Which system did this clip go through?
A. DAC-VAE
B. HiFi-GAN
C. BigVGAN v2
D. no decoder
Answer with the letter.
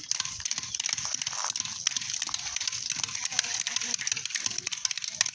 D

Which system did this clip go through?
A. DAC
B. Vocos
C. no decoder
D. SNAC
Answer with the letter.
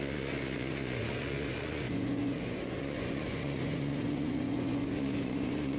B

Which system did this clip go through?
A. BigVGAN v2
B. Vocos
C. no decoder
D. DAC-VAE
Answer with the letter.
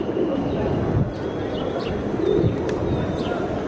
C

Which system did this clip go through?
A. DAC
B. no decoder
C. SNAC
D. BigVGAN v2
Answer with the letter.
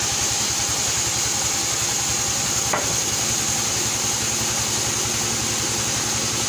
B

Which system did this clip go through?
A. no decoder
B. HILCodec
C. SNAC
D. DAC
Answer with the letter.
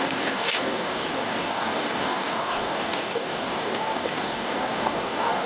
D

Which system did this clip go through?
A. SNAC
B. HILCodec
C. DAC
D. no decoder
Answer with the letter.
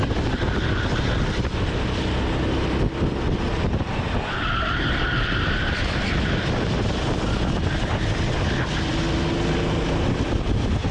D